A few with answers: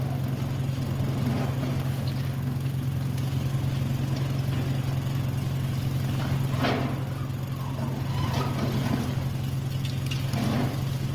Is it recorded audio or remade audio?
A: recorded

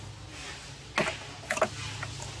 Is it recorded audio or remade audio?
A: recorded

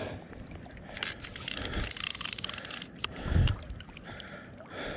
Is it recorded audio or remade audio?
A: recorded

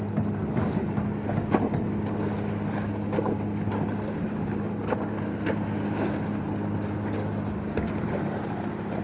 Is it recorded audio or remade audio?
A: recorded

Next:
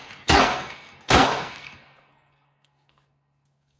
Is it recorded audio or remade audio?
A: remade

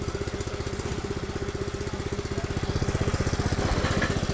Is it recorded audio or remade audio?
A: recorded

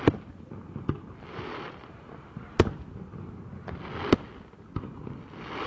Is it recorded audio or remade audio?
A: recorded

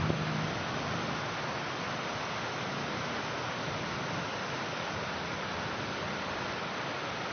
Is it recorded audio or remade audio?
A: recorded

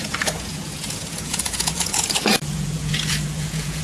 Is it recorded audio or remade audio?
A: remade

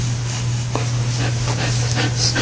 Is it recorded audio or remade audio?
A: recorded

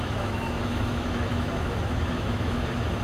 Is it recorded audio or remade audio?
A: remade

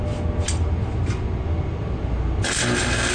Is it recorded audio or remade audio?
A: recorded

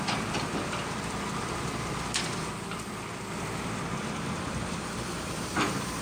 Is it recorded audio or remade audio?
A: remade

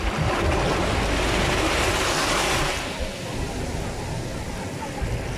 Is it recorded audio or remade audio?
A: recorded